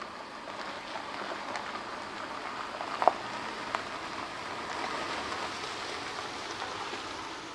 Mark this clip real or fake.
real